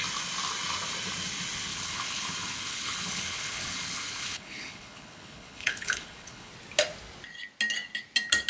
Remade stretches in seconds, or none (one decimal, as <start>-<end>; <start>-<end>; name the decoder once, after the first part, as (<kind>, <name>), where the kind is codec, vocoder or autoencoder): 1.7-6.5 (codec, HILCodec)